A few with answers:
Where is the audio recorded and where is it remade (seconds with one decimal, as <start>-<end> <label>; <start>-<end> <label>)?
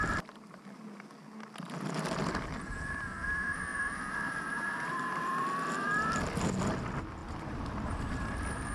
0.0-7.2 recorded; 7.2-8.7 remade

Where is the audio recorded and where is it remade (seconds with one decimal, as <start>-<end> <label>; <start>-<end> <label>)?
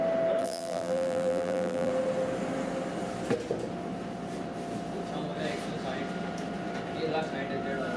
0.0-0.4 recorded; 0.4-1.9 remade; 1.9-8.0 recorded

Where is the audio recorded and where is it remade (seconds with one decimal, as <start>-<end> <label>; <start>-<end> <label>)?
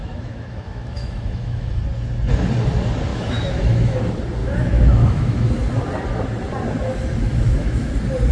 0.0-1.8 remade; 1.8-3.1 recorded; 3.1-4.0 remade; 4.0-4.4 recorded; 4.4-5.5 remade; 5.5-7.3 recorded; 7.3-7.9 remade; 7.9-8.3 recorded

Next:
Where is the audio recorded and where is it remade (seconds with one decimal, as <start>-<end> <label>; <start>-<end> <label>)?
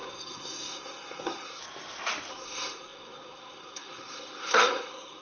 0.0-1.6 remade; 1.6-2.3 recorded; 2.3-5.2 remade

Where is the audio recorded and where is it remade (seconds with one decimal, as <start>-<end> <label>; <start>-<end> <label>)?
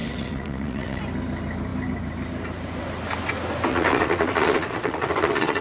0.0-1.0 remade; 1.0-3.7 recorded; 3.7-5.6 remade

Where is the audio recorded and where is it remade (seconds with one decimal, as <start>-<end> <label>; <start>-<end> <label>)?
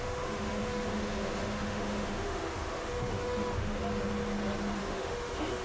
0.0-3.8 remade; 3.8-4.8 recorded; 4.8-5.6 remade